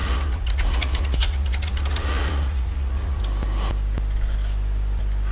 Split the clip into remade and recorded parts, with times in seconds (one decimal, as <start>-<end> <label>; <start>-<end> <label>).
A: 0.0-3.2 remade; 3.2-5.3 recorded